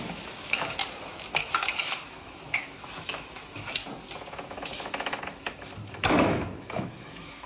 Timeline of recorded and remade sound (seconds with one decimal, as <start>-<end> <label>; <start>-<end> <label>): 0.0-0.8 remade; 0.8-1.4 recorded; 1.4-3.8 remade; 3.8-4.5 recorded; 4.5-7.5 remade